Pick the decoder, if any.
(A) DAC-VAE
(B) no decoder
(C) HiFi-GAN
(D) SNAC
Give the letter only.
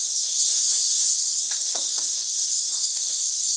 D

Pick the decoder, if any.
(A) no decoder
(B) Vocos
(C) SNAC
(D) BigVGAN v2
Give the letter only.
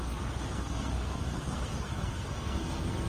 C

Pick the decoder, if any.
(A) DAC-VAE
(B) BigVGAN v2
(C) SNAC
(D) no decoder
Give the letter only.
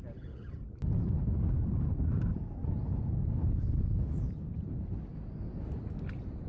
D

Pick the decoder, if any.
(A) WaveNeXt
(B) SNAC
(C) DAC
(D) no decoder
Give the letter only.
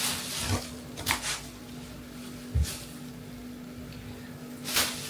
D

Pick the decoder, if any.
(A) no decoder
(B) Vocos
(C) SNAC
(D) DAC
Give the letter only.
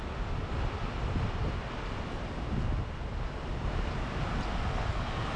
A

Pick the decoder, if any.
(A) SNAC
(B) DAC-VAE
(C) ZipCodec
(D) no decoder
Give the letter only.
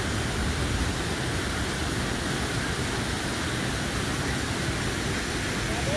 D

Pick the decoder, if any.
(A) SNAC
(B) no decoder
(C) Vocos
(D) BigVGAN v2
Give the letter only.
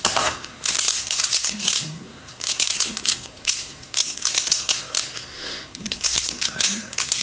A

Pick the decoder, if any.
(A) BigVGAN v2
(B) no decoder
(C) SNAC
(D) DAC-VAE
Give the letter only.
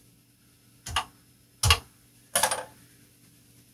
B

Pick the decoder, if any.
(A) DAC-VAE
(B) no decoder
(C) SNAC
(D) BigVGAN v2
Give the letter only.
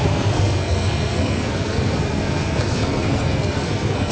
C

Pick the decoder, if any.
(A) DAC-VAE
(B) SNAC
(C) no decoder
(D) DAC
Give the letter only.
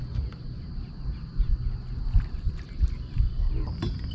C